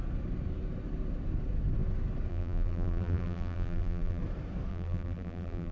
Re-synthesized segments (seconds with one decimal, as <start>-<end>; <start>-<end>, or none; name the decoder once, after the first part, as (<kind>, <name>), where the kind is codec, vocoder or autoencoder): 2.3-4.2 (vocoder, BigVGAN v2); 4.7-5.7